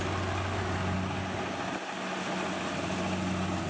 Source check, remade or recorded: recorded